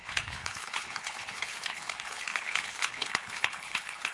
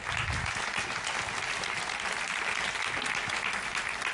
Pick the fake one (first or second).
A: first